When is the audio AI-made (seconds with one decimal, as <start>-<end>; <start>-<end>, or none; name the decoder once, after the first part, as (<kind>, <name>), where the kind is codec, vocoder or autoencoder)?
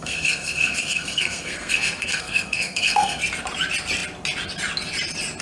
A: 0.0-3.2 (codec, SNAC)